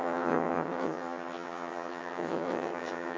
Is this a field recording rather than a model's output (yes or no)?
no